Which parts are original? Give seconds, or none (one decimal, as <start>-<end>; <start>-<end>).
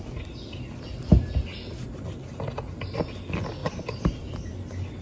0.0-3.6; 4.5-5.0